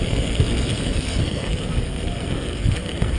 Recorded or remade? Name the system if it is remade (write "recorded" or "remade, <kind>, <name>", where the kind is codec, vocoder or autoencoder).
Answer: remade, codec, SNAC